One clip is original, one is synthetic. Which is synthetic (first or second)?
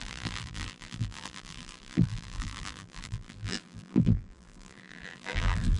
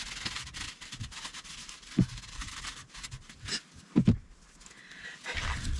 first